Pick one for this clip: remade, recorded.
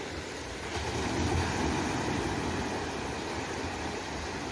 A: recorded